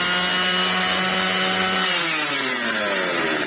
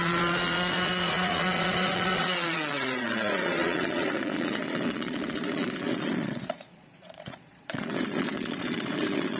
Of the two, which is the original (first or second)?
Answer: first